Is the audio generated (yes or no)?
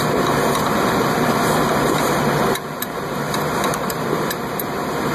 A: yes